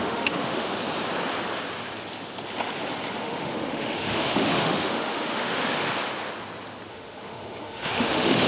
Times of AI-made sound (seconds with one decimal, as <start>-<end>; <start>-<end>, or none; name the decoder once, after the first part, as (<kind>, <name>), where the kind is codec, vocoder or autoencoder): 0.0-0.7 (autoencoder, DAC-VAE); 3.2-5.8; 6.9-8.5